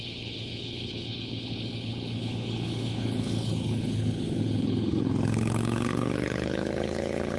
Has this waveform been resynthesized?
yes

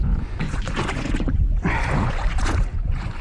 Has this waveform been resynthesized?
yes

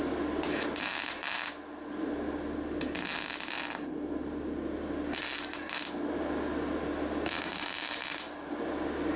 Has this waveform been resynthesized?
no